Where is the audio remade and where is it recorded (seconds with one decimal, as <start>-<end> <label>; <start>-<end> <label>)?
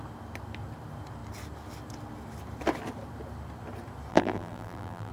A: 0.0-4.1 recorded; 4.1-5.1 remade